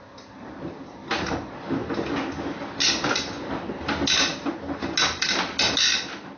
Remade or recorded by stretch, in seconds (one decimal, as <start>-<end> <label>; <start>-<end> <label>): 0.0-6.4 recorded